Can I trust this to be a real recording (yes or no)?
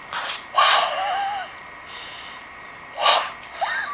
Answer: yes